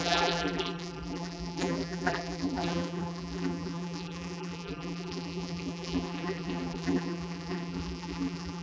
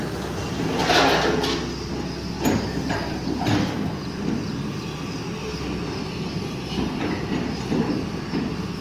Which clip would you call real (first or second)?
second